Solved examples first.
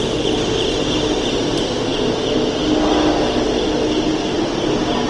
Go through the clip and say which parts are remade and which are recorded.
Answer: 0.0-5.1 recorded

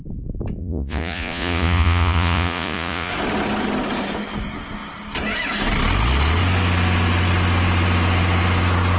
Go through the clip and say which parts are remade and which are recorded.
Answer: 0.0-0.6 recorded; 0.6-3.1 remade; 3.1-9.0 recorded

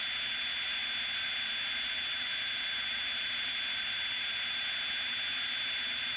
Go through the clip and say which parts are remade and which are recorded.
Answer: 0.0-6.2 recorded

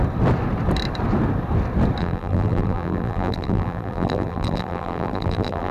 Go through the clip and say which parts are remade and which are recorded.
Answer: 0.0-2.0 recorded; 2.0-5.7 remade